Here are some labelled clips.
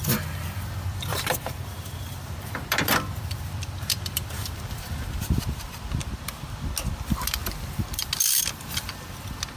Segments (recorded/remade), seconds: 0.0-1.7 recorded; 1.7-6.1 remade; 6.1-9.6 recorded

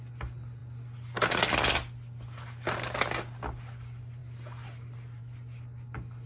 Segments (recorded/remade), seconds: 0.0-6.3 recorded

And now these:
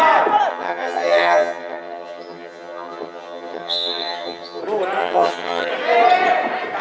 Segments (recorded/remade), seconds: 0.0-0.5 recorded; 0.5-4.6 remade; 4.6-5.0 recorded; 5.0-5.7 remade; 5.7-6.8 recorded

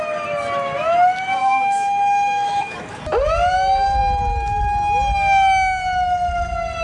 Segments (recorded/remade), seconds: 0.0-1.4 recorded; 1.4-3.0 remade; 3.0-6.8 recorded

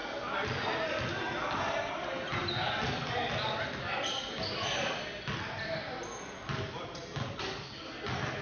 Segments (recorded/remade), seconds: 0.0-8.4 recorded

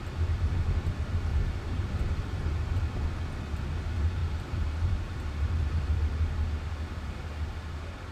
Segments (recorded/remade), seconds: 0.0-1.3 recorded; 1.3-2.7 remade; 2.7-4.2 recorded; 4.2-5.7 remade; 5.7-8.1 recorded